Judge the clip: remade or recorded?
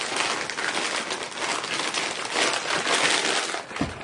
recorded